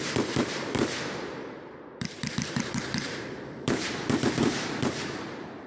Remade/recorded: remade